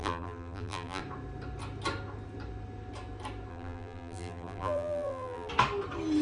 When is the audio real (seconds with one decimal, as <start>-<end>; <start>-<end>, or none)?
1.0-3.5; 5.5-6.2